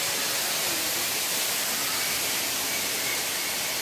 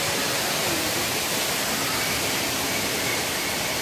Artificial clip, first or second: second